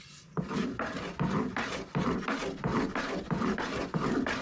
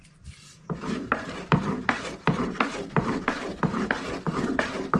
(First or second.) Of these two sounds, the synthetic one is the second